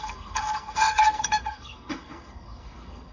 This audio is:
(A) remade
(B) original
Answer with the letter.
A